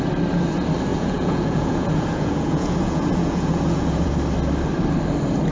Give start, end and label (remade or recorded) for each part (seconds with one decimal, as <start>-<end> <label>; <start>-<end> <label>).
0.0-0.9 recorded; 0.9-4.1 remade; 4.1-5.5 recorded